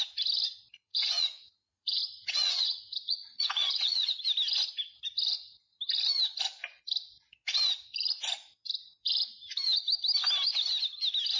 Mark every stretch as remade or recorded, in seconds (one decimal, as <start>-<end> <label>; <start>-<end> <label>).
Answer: 0.0-0.9 recorded; 0.9-4.2 remade; 4.2-11.4 recorded